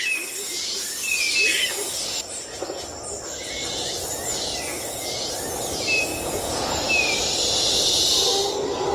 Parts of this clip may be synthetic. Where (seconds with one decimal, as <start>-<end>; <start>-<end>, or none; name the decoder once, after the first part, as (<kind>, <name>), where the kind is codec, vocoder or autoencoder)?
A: 6.1-6.9 (vocoder, Vocos)